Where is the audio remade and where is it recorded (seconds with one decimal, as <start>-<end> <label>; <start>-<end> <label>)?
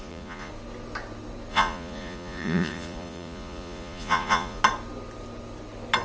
0.0-0.5 remade; 0.5-1.5 recorded; 1.5-4.6 remade; 4.6-6.0 recorded